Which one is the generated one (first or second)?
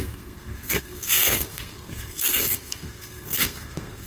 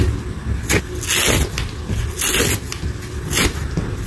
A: first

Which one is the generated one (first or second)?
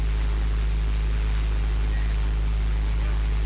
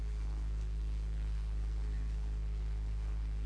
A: second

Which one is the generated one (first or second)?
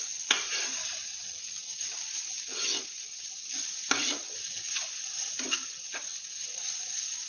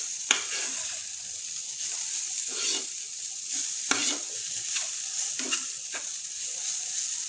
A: second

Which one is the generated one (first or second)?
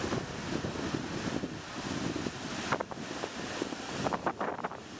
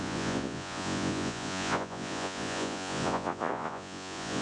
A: second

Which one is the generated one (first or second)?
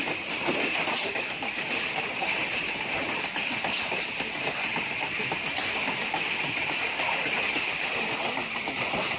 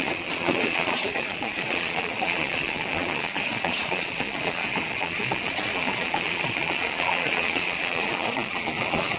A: second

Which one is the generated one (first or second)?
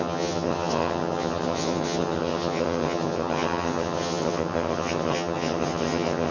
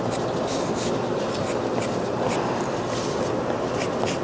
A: first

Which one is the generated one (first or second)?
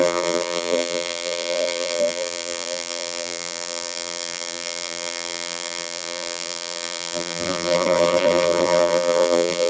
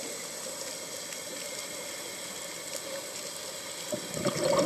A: first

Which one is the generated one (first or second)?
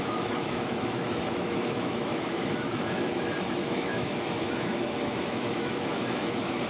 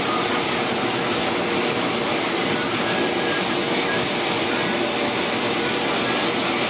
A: first